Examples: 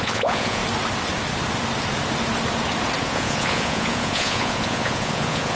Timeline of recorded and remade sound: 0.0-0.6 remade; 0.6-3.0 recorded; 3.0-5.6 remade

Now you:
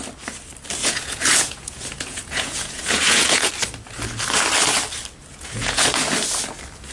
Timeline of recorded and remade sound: 0.0-0.8 recorded; 0.8-3.5 remade; 3.5-5.3 recorded; 5.3-5.9 remade; 5.9-6.9 recorded